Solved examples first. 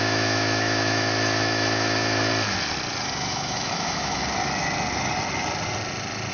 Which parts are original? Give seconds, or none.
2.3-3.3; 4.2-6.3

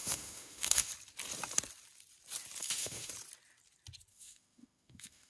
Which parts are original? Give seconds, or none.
0.9-2.6; 3.1-4.1

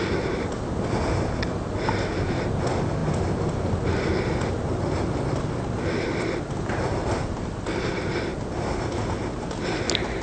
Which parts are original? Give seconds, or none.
0.0-10.2

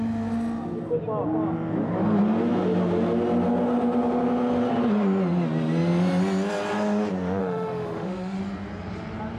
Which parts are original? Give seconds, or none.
0.0-7.4; 8.4-9.4

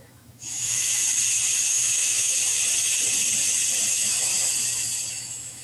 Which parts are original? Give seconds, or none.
1.0-1.7; 2.4-3.9; 4.3-5.1